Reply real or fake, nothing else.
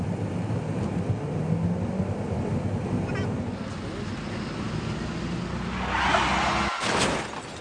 real